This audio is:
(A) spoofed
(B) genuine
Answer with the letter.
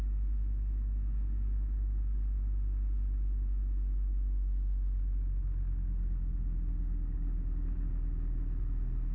B